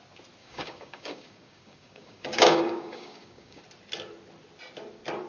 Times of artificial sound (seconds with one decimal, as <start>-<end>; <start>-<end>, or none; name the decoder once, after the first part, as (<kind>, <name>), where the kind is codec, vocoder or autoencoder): 0.4-3.6 (codec, DAC)